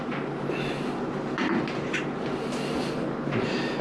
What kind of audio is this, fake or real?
real